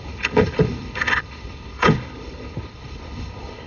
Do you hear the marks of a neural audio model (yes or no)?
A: yes